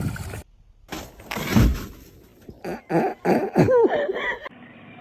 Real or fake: real